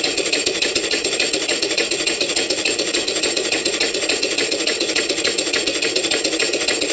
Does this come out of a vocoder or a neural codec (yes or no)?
yes